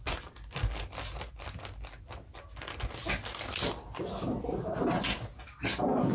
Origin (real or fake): real